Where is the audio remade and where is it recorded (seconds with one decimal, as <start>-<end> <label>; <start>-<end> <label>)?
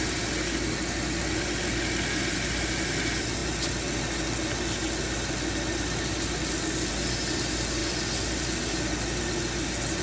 0.0-10.0 recorded